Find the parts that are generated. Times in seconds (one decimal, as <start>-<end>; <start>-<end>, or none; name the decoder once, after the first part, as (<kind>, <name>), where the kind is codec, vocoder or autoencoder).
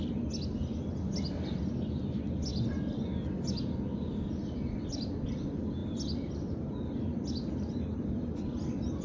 none